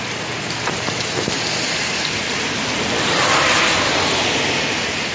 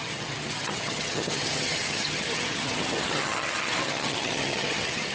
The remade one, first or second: second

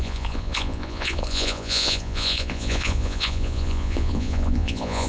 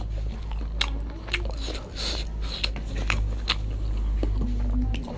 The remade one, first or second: first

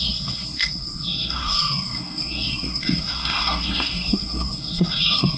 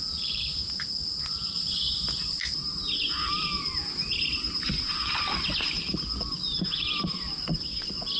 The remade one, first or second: first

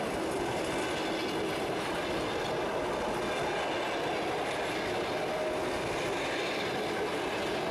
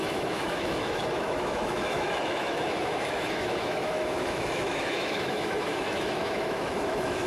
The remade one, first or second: second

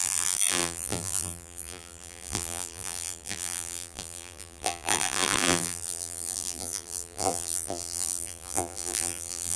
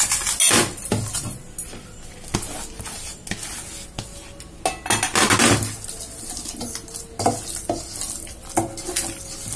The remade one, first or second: first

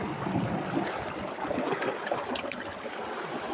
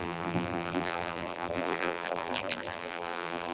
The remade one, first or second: second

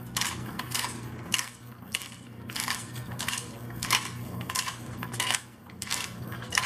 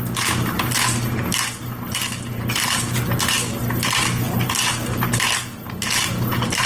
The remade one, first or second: first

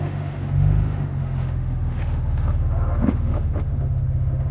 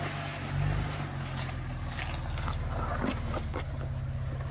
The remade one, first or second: first